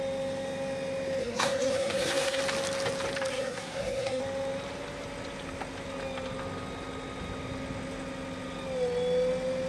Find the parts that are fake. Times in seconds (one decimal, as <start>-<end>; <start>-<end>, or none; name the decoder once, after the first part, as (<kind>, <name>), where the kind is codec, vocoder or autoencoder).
1.2-2.4 (codec, SNAC); 3.3-4.2